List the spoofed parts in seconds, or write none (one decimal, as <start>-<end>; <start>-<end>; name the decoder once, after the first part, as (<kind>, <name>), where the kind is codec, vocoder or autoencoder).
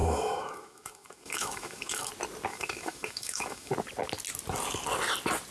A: 0.0-2.1 (autoencoder, DAC-VAE); 2.5-3.7